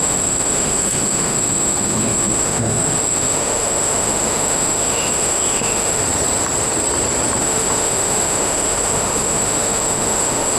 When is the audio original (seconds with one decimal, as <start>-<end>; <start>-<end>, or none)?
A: 6.0-7.4